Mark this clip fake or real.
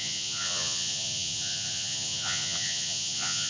fake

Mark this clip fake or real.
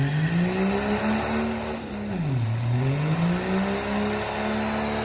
real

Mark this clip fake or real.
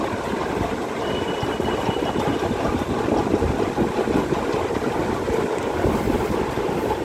real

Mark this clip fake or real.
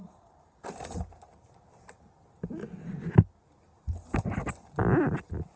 real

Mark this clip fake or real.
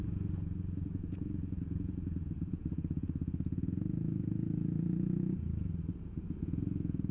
fake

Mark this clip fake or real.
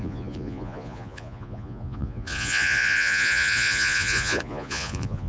fake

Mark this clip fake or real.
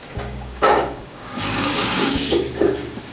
fake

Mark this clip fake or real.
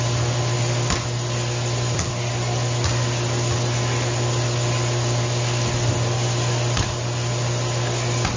real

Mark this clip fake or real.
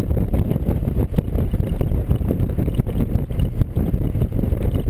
fake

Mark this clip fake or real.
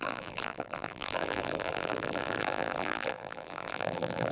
fake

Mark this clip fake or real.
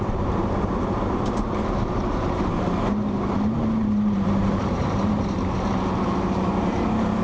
fake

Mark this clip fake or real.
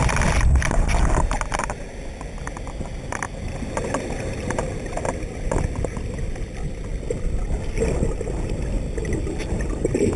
real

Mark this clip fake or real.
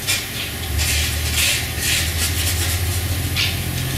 real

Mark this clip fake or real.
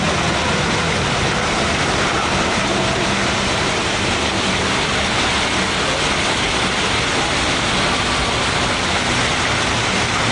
real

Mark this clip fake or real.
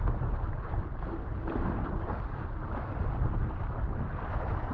real